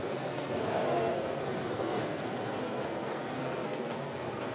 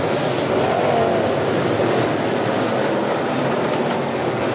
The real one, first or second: second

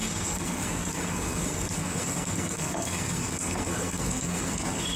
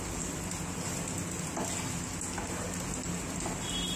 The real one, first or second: second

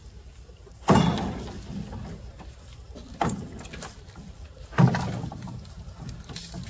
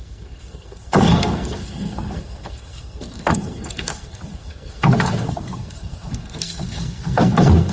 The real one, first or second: first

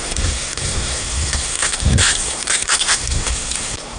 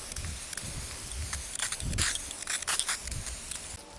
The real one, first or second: second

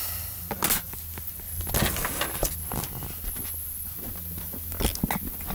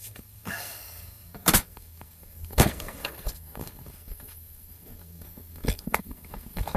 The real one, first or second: first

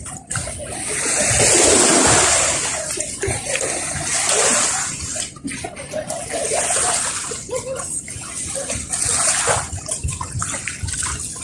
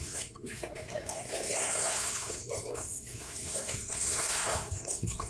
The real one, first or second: first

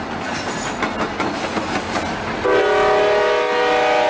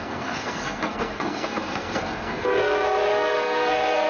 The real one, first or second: first